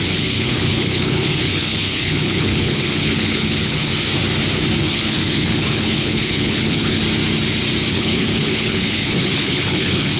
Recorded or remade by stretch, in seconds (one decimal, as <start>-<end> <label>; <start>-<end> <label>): 0.0-3.9 remade; 3.9-4.8 recorded; 4.8-7.0 remade; 7.0-7.9 recorded; 7.9-10.2 remade